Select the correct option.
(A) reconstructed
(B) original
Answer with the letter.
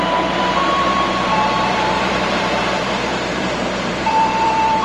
A